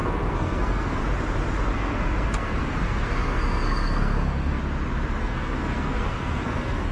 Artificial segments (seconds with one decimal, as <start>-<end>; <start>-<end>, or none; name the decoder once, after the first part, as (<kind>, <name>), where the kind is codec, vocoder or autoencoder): 0.0-1.0 (codec, SNAC); 1.7-4.6; 5.2-6.9